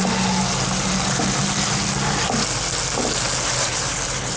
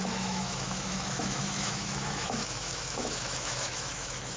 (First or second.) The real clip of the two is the first